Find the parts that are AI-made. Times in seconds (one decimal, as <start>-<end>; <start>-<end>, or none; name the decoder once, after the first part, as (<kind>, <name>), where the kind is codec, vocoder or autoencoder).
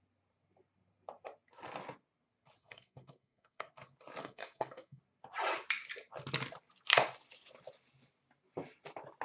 2.6-3.7 (codec, SNAC); 4.2-5.0